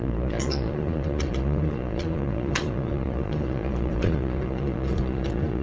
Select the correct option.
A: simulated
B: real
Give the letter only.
A